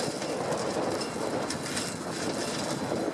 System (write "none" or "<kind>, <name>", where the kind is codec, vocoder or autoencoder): none